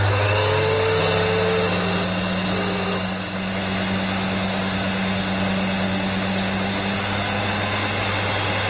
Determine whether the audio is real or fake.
real